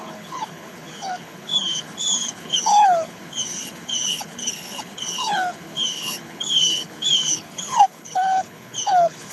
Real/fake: fake